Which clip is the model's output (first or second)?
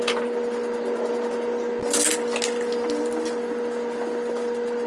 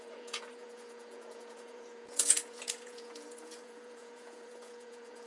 second